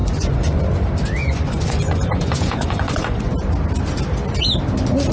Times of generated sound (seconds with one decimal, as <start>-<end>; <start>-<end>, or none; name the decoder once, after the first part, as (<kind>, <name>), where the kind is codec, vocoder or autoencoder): 0.0-0.6 (vocoder, Vocos); 1.2-3.3

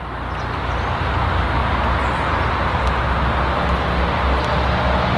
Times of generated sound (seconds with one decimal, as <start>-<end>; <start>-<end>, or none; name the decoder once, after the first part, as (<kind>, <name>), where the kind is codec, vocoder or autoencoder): none

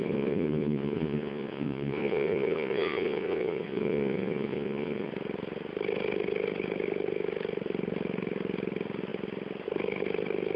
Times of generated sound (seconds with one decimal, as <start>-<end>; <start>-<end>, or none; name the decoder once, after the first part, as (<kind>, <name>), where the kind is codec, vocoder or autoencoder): 0.0-5.1 (vocoder, Vocos)

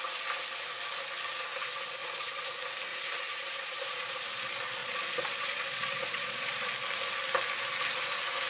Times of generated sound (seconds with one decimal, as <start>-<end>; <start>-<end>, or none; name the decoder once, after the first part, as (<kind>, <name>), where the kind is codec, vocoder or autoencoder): 2.0-2.5 (vocoder, Vocos); 2.9-4.1; 4.8-6.7

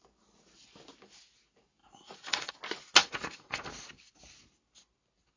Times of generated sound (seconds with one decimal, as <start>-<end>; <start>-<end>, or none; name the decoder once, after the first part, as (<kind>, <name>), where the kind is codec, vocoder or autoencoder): 1.8-2.5 (vocoder, Vocos); 3.0-3.7

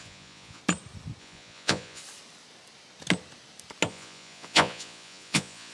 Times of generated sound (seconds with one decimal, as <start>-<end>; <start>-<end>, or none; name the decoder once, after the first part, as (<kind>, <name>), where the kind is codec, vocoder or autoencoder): 0.0-0.6 (vocoder, Vocos); 1.2-2.0; 3.9-5.7

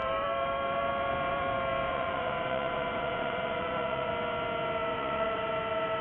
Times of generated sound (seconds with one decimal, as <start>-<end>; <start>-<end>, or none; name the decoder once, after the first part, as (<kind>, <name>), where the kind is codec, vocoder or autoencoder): 1.9-4.1 (vocoder, Vocos); 4.9-5.5